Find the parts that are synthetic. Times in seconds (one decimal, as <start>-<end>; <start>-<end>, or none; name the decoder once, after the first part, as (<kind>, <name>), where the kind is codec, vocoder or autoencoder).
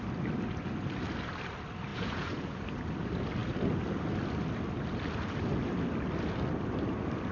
1.9-2.6 (vocoder, Vocos)